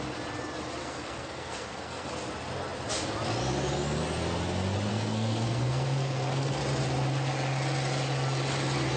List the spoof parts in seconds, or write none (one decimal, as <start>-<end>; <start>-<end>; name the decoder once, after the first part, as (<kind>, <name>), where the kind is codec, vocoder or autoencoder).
0.8-2.1 (codec, SNAC); 4.9-6.6